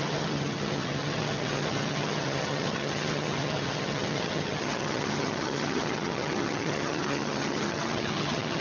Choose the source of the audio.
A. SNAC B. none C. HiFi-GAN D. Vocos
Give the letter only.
C